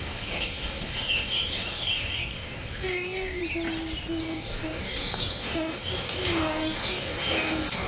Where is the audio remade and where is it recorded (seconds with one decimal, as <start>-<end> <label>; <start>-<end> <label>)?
0.0-3.4 remade; 3.4-4.2 recorded; 4.2-7.9 remade